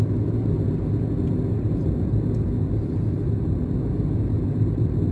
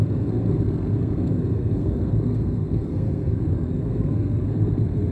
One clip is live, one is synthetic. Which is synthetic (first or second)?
second